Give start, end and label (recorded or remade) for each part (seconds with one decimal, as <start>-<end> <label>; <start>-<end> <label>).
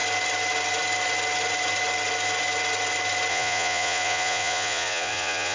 0.0-3.3 recorded; 3.3-5.5 remade